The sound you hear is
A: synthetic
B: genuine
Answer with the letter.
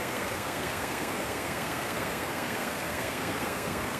A